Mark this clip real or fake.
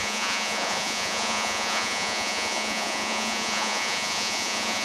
fake